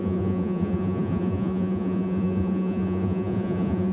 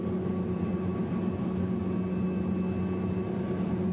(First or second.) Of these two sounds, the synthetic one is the first